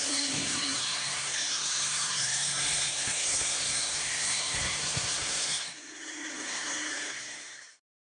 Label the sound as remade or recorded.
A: remade